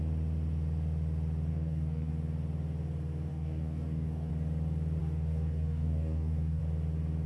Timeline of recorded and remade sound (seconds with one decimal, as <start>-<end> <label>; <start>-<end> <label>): 0.0-1.5 recorded; 1.5-2.1 remade; 2.1-3.3 recorded; 3.3-4.3 remade; 4.3-5.0 recorded; 5.0-6.6 remade; 6.6-7.3 recorded